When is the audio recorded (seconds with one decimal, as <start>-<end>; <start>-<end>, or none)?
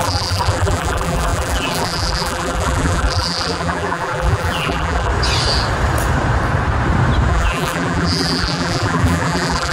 5.1-7.3